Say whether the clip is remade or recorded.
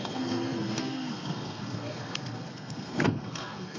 remade